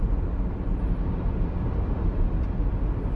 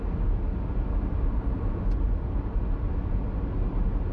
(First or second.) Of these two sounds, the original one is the second